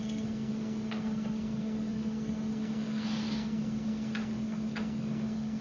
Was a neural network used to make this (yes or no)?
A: yes